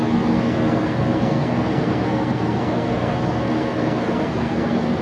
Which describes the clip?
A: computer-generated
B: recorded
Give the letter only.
A